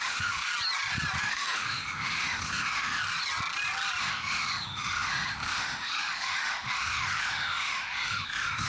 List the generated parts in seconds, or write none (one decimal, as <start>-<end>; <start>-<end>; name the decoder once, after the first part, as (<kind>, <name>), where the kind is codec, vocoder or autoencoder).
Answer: 0.0-0.5 (autoencoder, DAC-VAE); 1.2-3.0; 4.0-8.7